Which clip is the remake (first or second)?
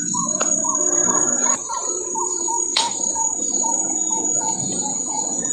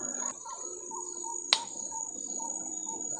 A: first